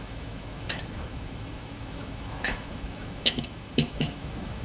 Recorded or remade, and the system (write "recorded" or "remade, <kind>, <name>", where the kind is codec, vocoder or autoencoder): remade, autoencoder, DAC-VAE